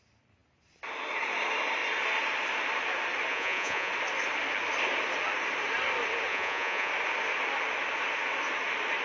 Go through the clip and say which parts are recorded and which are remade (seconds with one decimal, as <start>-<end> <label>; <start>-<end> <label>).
0.0-3.3 recorded; 3.3-3.9 remade; 3.9-6.3 recorded; 6.3-6.9 remade; 6.9-9.0 recorded